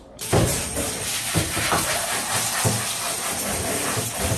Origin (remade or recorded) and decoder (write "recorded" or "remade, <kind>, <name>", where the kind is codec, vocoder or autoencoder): recorded